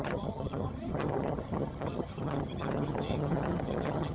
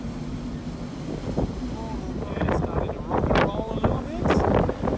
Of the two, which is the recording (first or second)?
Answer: second